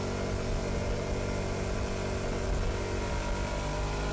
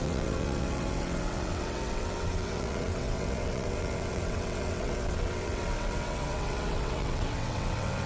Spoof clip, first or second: second